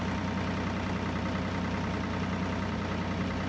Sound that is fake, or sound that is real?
real